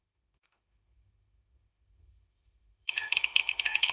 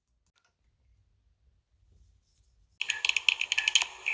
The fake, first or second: first